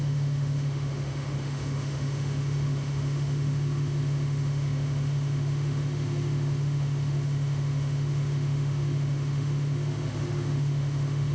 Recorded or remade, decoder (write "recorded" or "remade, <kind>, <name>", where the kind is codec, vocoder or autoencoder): remade, autoencoder, DAC-VAE